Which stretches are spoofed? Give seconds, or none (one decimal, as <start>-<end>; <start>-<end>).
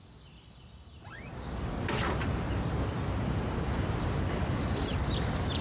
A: none